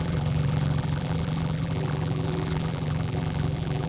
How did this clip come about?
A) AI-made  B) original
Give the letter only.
A